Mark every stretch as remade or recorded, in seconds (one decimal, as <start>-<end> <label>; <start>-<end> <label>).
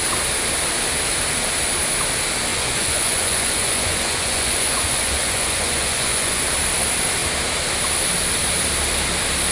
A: 0.0-2.5 recorded; 2.5-6.4 remade; 6.4-9.5 recorded